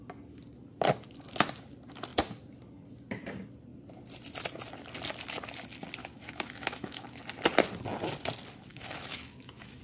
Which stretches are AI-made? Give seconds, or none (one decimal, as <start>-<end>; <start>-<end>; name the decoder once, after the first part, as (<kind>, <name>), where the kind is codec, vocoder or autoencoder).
6.0-7.2 (autoencoder, DAC-VAE); 8.7-9.8